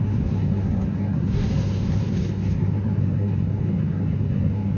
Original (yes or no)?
no